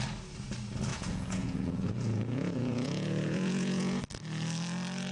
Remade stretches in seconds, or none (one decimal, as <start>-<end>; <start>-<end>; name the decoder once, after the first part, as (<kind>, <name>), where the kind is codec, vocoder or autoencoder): 0.9-4.0 (vocoder, Vocos)